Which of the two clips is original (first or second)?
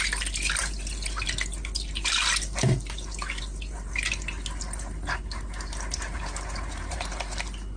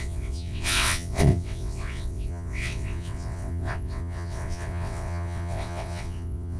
first